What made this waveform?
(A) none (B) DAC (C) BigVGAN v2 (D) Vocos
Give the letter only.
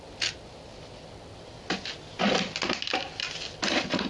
A